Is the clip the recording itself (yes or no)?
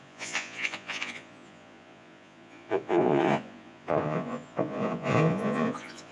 no